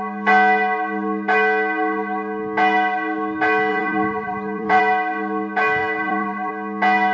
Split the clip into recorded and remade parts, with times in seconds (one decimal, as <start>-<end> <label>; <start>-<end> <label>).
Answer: 0.0-3.7 recorded; 3.7-4.8 remade; 4.8-5.8 recorded; 5.8-6.5 remade; 6.5-7.1 recorded

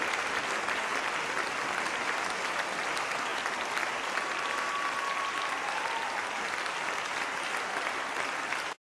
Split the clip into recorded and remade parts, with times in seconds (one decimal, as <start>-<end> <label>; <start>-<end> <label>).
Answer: 0.0-8.9 recorded

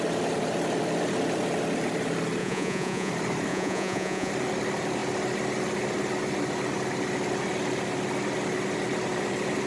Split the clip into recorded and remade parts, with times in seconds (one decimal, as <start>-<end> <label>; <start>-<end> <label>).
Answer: 0.0-2.4 recorded; 2.4-3.1 remade; 3.1-3.5 recorded; 3.5-4.3 remade; 4.3-9.7 recorded

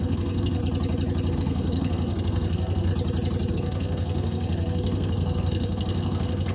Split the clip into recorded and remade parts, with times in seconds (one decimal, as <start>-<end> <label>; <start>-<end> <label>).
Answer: 0.0-0.6 remade; 0.6-1.3 recorded; 1.3-2.9 remade; 2.9-3.5 recorded; 3.5-6.5 remade

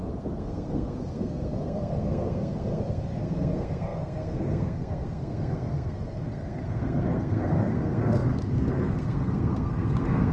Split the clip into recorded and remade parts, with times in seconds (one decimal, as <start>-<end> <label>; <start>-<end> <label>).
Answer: 0.0-10.3 remade